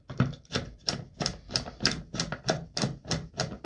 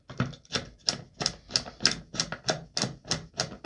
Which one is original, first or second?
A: second